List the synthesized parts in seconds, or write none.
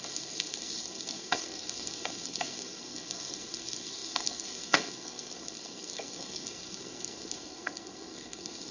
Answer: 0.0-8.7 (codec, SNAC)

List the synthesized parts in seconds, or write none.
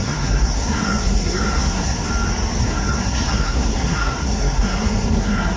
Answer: 0.0-2.1 (codec, SNAC); 2.6-5.6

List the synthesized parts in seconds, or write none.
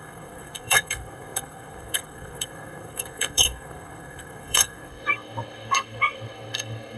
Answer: 0.0-7.0 (codec, SNAC)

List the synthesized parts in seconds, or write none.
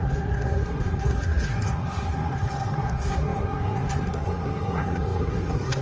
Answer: 0.0-5.8 (codec, SNAC)